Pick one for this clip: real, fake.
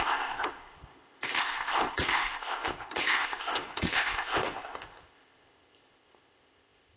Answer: fake